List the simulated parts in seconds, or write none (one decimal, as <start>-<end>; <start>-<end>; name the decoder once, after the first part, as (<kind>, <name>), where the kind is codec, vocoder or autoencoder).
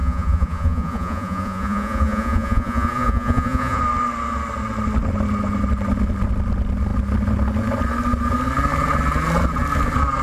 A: 0.0-3.8 (vocoder, Vocos)